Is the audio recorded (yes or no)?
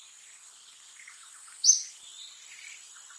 yes